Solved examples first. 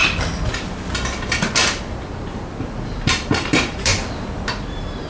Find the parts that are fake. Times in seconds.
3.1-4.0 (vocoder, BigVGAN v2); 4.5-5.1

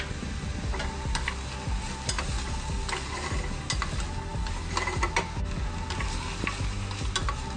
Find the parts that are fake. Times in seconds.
none